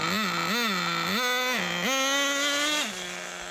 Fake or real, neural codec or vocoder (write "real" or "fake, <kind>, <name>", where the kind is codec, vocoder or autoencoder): real